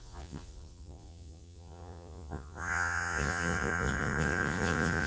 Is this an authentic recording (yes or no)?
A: no